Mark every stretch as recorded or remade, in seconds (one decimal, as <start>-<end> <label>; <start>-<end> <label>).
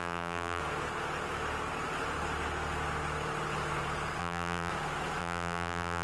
0.0-0.6 remade; 0.6-4.2 recorded; 4.2-4.7 remade; 4.7-5.2 recorded; 5.2-6.0 remade